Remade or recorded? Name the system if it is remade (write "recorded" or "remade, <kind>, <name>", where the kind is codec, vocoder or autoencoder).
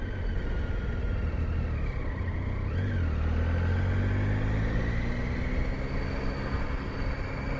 recorded